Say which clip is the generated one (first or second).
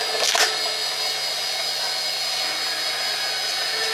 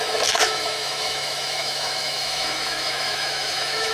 second